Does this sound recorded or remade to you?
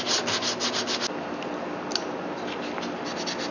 recorded